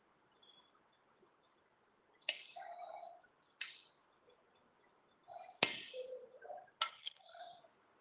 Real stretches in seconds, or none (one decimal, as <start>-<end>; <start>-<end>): 0.0-6.9; 7.4-8.0